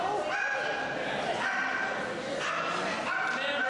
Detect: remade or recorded recorded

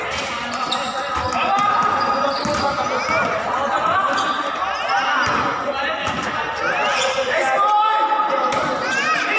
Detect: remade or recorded recorded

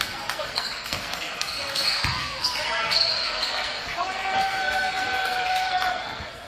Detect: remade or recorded remade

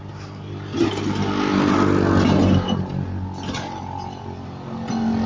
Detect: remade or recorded recorded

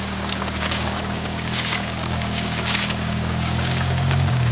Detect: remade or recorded remade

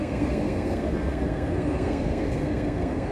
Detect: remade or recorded remade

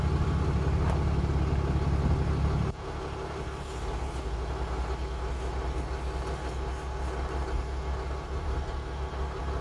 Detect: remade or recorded recorded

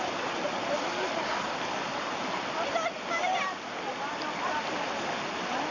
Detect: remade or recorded recorded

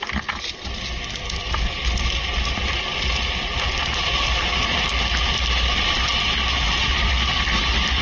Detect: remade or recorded recorded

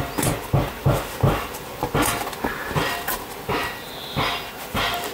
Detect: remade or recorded recorded